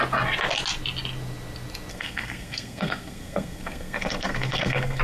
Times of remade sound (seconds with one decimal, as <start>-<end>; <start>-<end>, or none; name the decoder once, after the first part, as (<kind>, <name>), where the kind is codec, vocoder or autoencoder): 1.9-5.0 (codec, SNAC)